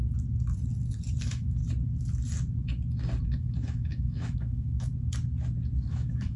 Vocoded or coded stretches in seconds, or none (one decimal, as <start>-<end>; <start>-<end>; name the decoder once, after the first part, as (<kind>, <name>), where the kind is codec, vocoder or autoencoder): 1.2-1.6 (autoencoder, DAC-VAE); 3.2-4.9; 5.9-6.4